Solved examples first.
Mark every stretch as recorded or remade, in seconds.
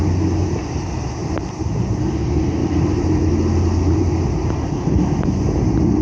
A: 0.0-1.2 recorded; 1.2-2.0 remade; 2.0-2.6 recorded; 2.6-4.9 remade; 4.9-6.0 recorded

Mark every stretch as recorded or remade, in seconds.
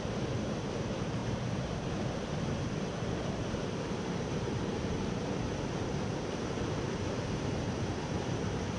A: 0.0-8.8 remade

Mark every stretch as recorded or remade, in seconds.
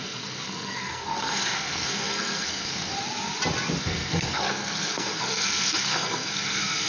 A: 0.0-2.9 remade; 2.9-3.8 recorded; 3.8-6.9 remade